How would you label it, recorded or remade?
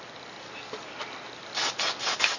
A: recorded